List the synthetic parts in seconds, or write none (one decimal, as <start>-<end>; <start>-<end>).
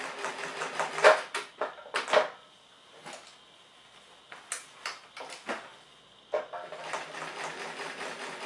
none